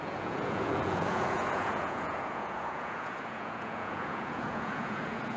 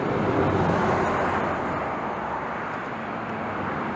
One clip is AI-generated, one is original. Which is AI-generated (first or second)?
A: first